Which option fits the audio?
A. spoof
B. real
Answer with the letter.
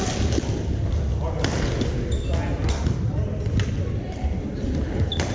B